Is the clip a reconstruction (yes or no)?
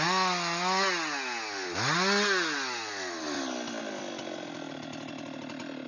no